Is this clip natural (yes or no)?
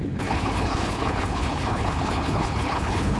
no